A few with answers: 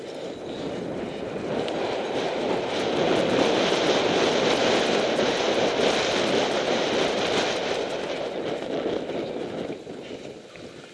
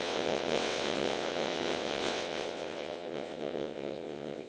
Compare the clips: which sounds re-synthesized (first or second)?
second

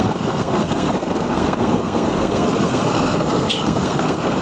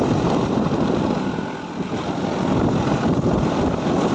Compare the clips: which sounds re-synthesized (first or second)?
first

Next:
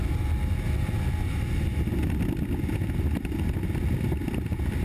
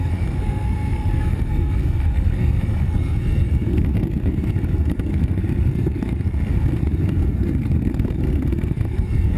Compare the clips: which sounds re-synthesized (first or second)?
second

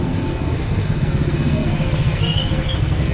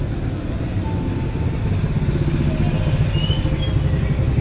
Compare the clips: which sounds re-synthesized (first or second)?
first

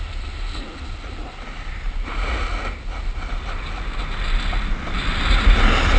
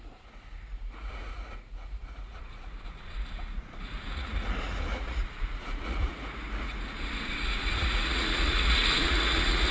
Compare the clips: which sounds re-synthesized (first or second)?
second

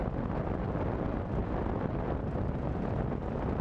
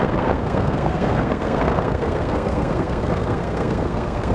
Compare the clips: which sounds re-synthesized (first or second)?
second